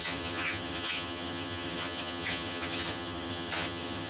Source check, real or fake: fake